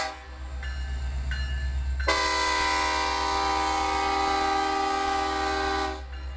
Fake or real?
real